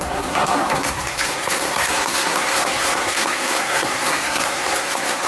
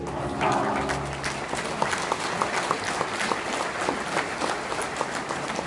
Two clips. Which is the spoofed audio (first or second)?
first